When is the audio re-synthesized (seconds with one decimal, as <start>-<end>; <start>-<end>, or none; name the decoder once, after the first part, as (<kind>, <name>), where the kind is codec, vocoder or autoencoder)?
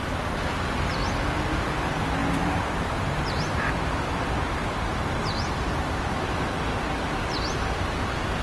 2.2-5.7 (vocoder, BigVGAN v2)